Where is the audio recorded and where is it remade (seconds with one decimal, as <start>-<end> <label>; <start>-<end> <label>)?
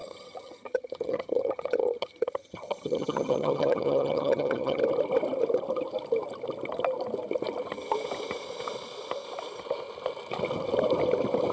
0.0-4.8 remade; 4.8-11.5 recorded